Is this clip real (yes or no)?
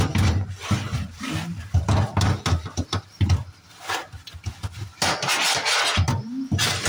yes